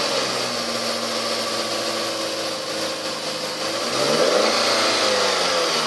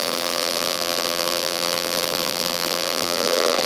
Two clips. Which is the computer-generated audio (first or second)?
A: second